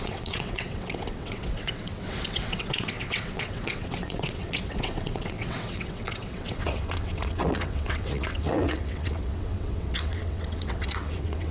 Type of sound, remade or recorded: remade